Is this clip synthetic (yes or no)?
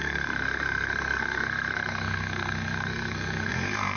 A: yes